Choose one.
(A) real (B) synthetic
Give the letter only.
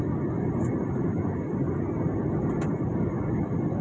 A